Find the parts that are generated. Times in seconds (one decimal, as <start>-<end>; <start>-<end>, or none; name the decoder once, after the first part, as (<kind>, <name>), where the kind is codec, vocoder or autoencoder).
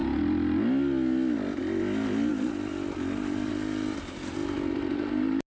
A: 2.3-3.5 (vocoder, BigVGAN v2); 4.4-5.1